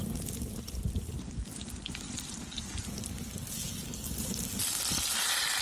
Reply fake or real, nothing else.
real